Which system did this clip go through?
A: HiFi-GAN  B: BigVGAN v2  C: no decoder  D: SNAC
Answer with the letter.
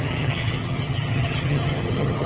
A